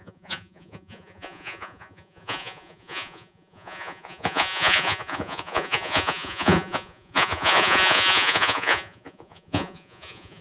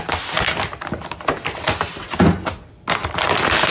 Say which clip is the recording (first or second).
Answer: second